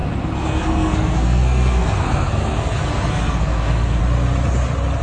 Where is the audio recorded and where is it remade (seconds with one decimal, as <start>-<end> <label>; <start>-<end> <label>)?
0.0-4.0 remade; 4.0-5.0 recorded